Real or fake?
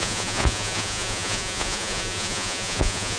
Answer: fake